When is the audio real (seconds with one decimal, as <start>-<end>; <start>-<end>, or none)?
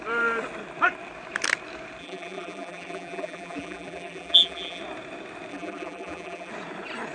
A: 0.0-2.0; 4.8-5.5; 6.5-7.1